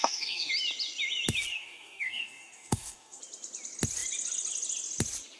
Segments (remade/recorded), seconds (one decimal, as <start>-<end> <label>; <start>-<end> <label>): 0.0-0.5 remade; 0.5-1.5 recorded; 1.5-3.2 remade; 3.2-5.4 recorded